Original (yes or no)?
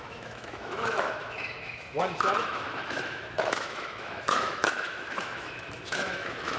no